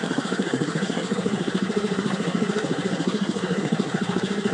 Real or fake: fake